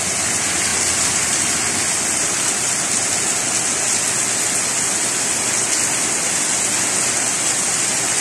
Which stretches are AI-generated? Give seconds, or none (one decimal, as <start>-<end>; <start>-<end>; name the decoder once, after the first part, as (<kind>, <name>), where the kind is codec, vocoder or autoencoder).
none